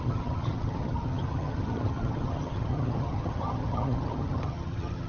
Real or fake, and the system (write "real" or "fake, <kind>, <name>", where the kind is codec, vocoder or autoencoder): fake, vocoder, HiFi-GAN